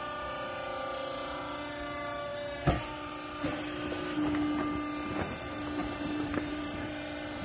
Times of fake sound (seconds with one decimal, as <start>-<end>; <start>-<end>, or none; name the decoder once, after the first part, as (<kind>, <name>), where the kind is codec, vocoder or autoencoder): 2.3-3.1 (vocoder, BigVGAN v2); 5.8-7.4